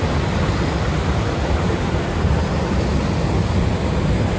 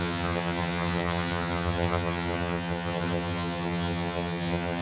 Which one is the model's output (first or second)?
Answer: second